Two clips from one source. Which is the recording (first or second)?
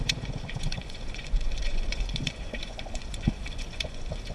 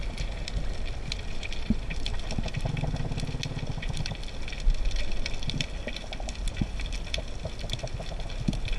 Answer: second